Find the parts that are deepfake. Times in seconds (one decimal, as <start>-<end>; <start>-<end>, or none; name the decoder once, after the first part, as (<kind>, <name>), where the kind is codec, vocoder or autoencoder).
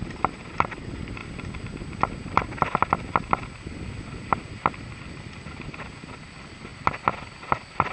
0.0-1.2 (vocoder, BigVGAN v2); 4.5-7.9